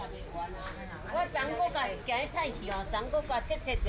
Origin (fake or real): real